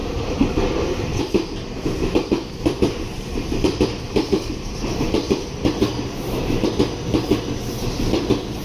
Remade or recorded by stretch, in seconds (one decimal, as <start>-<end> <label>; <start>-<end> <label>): 0.0-3.1 recorded; 3.1-6.7 remade; 6.7-8.6 recorded